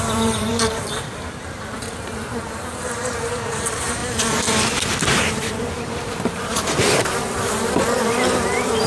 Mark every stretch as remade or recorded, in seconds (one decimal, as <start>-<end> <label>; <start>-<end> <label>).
0.0-4.0 remade; 4.0-5.0 recorded; 5.0-8.9 remade